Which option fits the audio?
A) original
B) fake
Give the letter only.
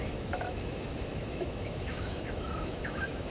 B